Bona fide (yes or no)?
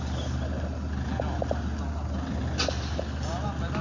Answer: yes